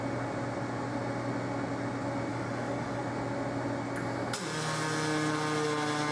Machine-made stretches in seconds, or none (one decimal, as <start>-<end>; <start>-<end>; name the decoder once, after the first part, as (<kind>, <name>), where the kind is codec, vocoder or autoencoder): 2.3-3.0 (codec, DAC)